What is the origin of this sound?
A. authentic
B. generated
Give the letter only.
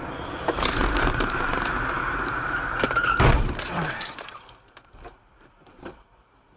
B